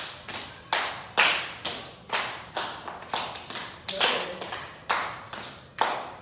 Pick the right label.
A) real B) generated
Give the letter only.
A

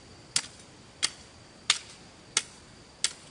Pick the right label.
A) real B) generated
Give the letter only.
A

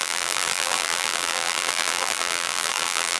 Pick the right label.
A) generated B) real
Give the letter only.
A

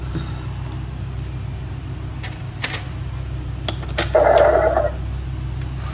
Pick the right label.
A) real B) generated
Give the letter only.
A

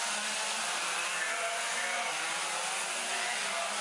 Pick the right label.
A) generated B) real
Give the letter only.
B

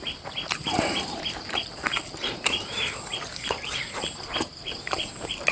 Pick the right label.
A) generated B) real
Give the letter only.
A